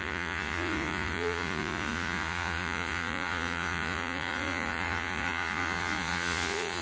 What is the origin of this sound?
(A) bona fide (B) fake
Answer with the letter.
B